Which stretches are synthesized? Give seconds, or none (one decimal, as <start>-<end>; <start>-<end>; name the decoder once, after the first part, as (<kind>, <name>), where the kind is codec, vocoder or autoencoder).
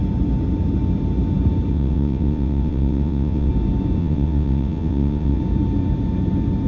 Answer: 1.7-3.5 (vocoder, WaveNeXt); 4.0-5.4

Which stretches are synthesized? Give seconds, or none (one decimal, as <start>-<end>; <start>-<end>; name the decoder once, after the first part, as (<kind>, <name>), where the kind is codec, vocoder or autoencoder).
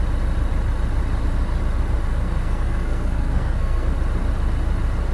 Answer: 2.1-3.9 (codec, SNAC)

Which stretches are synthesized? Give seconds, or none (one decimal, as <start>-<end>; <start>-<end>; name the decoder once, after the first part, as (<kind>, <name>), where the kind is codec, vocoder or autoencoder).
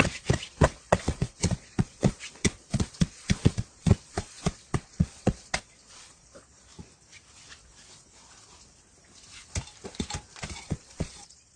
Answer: 0.0-6.7 (vocoder, Vocos); 10.6-11.6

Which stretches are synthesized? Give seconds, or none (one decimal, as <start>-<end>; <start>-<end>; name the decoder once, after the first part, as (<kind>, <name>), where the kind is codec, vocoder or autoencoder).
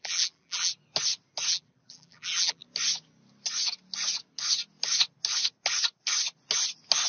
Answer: 0.0-0.7 (vocoder, BigVGAN v2); 1.5-2.6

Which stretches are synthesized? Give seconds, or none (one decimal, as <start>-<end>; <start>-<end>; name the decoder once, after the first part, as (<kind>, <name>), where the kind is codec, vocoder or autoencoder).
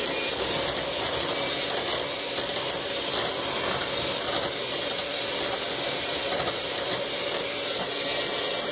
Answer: none